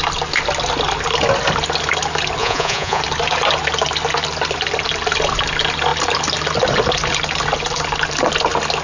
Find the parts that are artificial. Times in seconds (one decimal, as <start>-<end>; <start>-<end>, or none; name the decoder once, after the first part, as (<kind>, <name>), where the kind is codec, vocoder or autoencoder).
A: 2.4-3.0 (vocoder, Vocos)